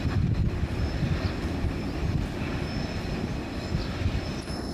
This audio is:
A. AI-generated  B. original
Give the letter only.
B